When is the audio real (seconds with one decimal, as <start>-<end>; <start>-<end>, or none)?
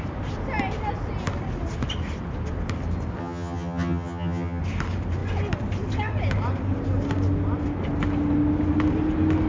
0.0-3.2; 4.6-9.5